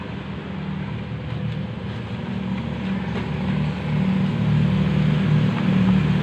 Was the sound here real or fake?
real